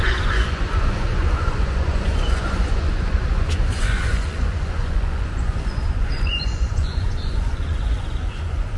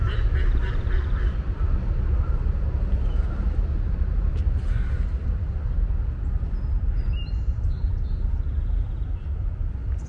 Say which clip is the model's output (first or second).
first